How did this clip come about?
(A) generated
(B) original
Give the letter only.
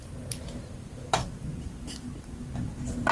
B